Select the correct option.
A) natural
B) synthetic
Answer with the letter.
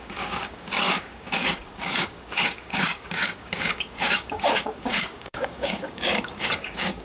B